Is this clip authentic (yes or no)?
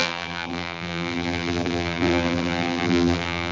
no